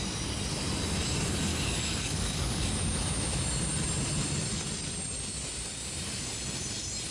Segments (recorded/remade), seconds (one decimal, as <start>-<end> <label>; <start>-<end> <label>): 0.0-1.5 recorded; 1.5-2.6 remade; 2.6-7.1 recorded